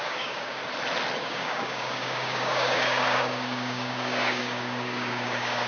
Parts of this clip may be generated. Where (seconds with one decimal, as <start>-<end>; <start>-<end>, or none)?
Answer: 0.0-0.6; 1.2-5.7

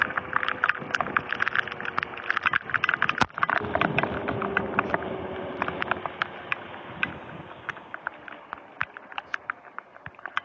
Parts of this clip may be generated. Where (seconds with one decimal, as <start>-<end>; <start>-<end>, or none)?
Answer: 7.1-8.0

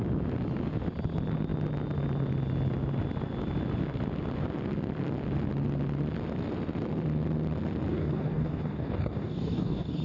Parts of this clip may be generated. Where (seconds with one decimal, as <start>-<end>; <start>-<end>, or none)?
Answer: 7.9-10.0

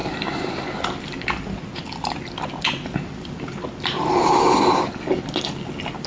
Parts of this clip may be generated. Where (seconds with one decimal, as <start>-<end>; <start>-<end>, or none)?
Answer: none